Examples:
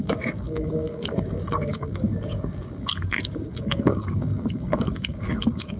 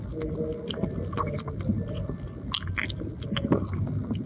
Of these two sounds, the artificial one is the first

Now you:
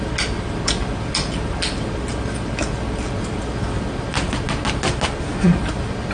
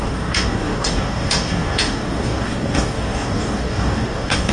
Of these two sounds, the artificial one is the second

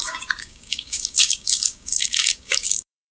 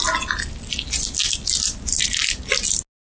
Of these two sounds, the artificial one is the first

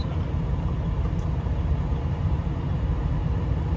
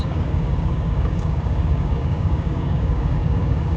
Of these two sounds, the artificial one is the second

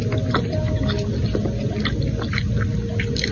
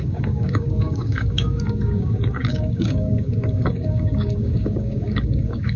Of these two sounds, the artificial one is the second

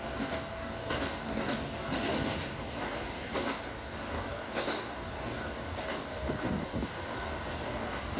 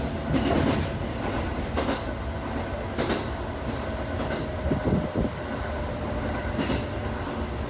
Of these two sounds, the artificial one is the first